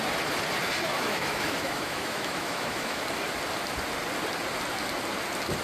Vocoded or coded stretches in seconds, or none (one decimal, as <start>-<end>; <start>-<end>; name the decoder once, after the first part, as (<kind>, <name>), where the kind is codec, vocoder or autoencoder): 0.9-3.0 (autoencoder, DAC-VAE)